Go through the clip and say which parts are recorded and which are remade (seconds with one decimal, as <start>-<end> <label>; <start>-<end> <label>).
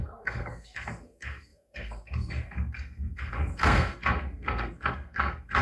0.0-5.6 remade